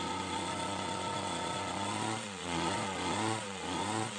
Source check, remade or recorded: remade